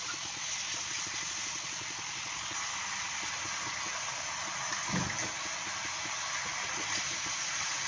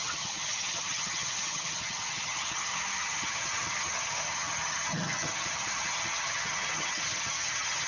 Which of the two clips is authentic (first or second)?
first